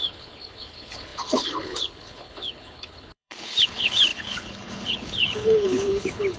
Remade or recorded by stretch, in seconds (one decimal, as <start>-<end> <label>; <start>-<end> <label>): 0.0-6.4 remade